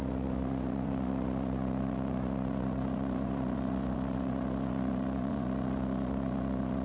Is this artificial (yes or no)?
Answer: yes